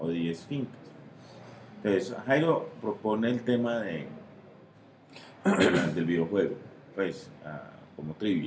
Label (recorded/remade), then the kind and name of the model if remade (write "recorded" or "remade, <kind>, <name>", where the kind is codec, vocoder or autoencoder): recorded